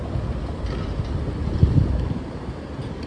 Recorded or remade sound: recorded